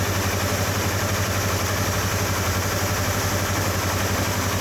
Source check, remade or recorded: recorded